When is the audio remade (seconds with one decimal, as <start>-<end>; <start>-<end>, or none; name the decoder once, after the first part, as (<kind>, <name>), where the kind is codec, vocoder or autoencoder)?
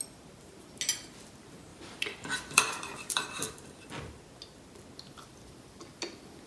1.7-4.2 (vocoder, BigVGAN v2)